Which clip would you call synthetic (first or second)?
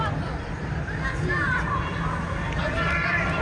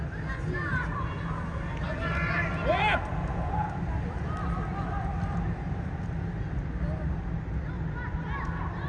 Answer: first